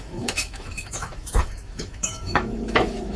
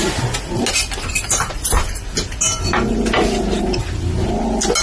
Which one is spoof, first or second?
first